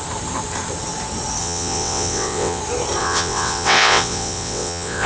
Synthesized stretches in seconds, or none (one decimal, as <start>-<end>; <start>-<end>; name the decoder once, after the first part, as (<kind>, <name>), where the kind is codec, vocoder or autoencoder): 1.4-2.6 (vocoder, WaveNeXt); 3.0-5.1